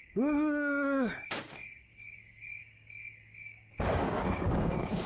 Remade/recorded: remade